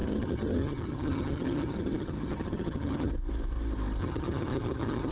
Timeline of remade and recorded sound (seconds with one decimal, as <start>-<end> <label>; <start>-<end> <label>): 0.0-3.1 remade; 3.1-4.0 recorded; 4.0-5.1 remade